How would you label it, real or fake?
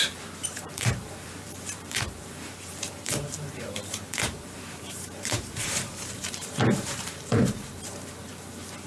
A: fake